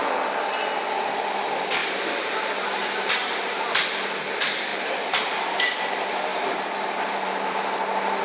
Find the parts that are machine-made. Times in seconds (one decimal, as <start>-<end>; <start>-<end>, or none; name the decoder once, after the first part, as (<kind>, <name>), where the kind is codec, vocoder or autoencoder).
1.8-3.4 (vocoder, BigVGAN v2); 4.7-5.8; 6.3-8.2